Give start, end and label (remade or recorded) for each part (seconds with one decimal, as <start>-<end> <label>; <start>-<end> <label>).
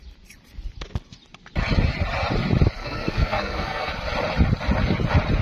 0.0-2.8 recorded; 2.8-3.9 remade; 3.9-5.4 recorded